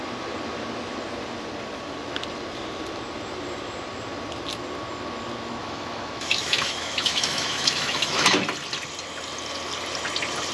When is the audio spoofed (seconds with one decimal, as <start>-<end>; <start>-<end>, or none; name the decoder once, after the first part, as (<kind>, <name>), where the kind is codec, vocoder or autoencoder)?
5.6-8.4 (autoencoder, DAC-VAE)